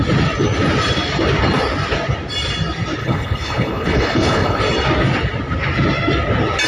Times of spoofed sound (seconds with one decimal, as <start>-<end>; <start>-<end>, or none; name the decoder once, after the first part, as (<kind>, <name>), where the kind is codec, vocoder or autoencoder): 3.0-4.6 (codec, HILCodec)